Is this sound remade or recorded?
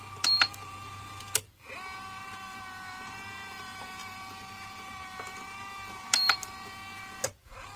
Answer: recorded